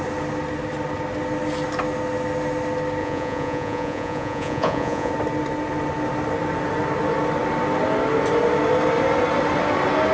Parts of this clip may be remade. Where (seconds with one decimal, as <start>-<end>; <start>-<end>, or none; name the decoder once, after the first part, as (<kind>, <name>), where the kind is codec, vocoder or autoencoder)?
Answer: 3.0-5.1 (vocoder, Vocos)

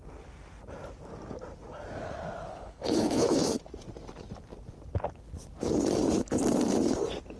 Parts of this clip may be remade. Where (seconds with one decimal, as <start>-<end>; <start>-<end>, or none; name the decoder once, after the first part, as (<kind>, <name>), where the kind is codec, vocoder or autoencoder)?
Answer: 2.5-3.6 (codec, HILCodec)

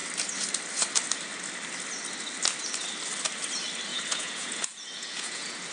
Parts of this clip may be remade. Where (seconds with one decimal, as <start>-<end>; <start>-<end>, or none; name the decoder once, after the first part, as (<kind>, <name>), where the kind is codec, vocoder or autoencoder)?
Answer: 3.9-5.7 (vocoder, Vocos)

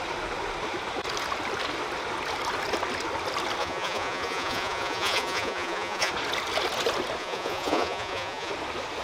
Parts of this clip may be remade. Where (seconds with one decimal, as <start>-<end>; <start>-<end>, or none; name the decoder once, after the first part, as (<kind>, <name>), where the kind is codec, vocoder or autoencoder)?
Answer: 3.6-6.1 (vocoder, Vocos); 7.2-8.5

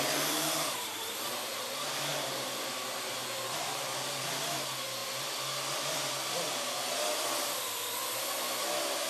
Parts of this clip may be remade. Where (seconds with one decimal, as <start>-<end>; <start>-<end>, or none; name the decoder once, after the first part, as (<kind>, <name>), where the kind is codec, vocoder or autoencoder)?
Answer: none

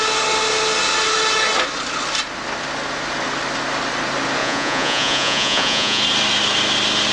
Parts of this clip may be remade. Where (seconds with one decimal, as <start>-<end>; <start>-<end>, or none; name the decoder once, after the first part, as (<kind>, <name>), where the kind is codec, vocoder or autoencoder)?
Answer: 4.4-6.0 (vocoder, Vocos)